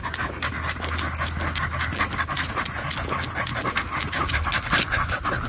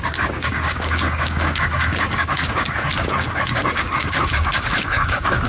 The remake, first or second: second